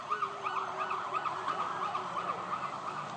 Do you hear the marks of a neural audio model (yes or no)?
no